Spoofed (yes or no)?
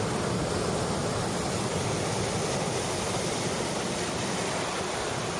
no